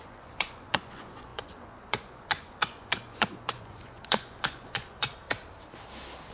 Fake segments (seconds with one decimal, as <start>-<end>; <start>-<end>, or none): 0.0-5.1

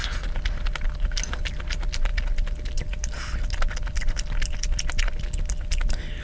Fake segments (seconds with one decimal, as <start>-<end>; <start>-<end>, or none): none

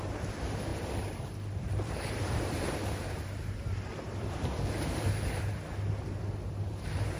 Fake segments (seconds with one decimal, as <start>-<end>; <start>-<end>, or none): 0.7-4.6

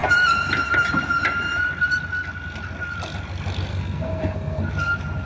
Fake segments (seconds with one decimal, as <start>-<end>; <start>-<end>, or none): 3.7-4.7

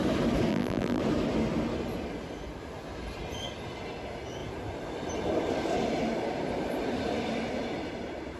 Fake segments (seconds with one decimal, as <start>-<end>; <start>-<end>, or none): 0.5-1.0

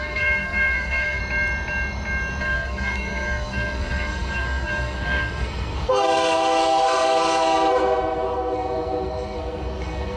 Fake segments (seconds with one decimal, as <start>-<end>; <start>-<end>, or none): 0.0-1.2; 2.4-10.2

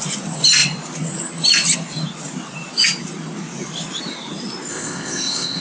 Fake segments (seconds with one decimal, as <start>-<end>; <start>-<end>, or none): 4.7-5.6